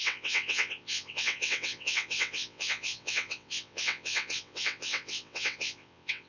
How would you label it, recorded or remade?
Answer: remade